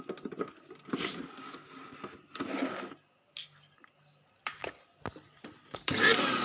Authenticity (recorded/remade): remade